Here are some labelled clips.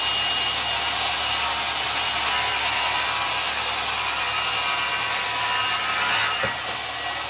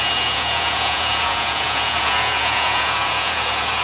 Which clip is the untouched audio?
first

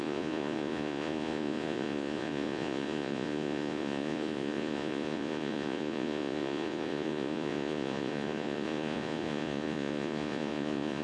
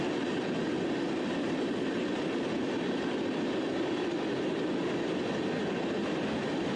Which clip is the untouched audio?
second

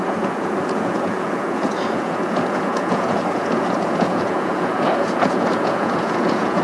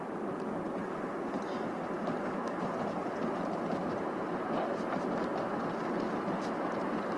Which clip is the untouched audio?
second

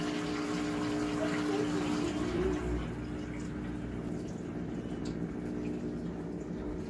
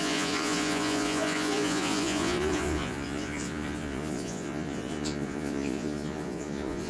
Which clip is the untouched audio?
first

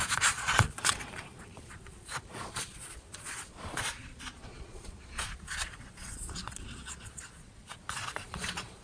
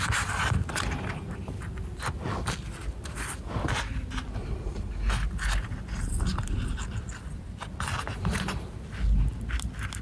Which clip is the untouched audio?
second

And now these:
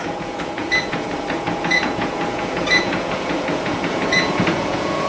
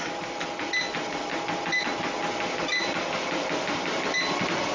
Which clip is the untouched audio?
second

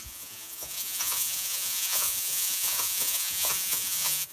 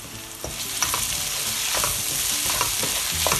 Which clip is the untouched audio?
second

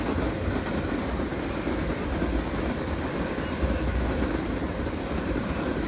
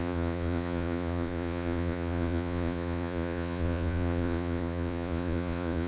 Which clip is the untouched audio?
first